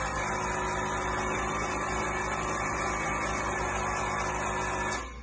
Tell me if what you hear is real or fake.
real